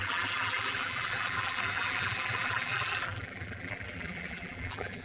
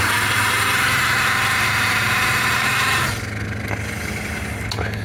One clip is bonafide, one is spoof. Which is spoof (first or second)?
first